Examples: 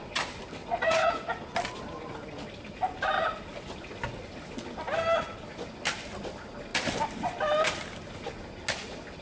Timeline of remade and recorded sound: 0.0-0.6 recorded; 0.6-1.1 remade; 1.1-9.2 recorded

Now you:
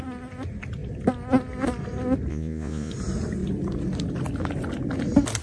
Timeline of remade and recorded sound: 0.0-2.3 recorded; 2.3-2.9 remade; 2.9-5.4 recorded

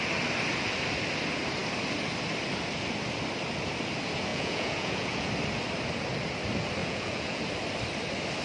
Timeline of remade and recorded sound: 0.0-4.3 recorded; 4.3-5.3 remade; 5.3-6.8 recorded; 6.8-7.4 remade; 7.4-8.4 recorded

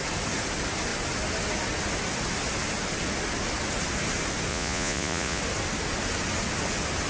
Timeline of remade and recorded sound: 0.0-4.5 recorded; 4.5-5.4 remade; 5.4-7.1 recorded